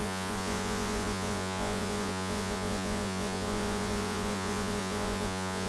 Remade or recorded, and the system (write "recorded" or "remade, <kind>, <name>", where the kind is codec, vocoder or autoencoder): remade, vocoder, Vocos